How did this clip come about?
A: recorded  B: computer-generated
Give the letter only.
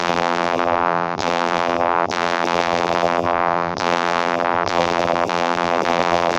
B